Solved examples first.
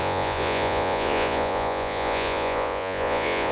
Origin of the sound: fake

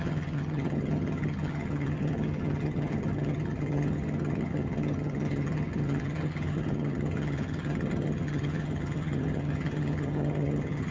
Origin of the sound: fake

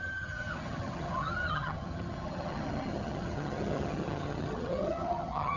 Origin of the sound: fake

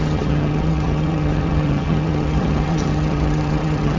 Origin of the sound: fake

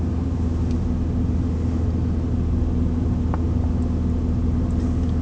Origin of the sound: real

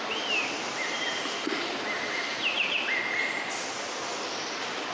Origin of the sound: real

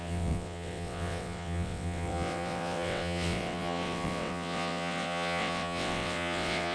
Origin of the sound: fake